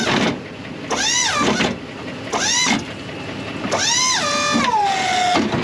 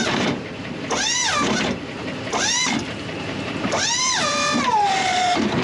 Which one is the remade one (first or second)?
second